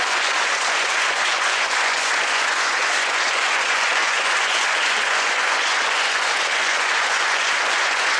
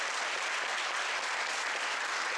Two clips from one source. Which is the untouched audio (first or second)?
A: second